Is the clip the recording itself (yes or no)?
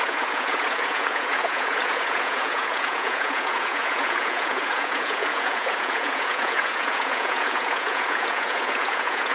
no